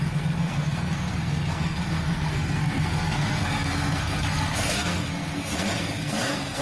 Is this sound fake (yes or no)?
yes